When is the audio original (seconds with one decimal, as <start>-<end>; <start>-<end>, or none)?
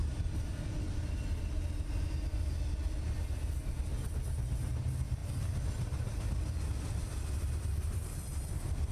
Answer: 0.0-8.9